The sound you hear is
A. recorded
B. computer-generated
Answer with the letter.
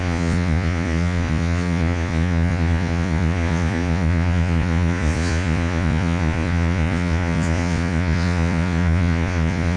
B